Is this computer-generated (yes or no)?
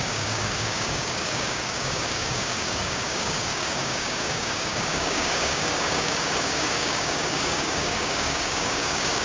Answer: yes